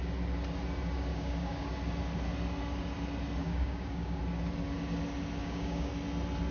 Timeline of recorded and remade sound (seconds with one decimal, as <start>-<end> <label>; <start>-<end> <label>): 0.0-1.1 recorded; 1.1-1.7 remade; 1.7-3.4 recorded; 3.4-4.2 remade; 4.2-5.4 recorded; 5.4-5.9 remade; 5.9-6.5 recorded